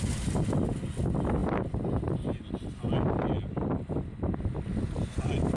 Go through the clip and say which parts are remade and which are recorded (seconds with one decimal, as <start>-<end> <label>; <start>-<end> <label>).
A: 0.0-5.6 recorded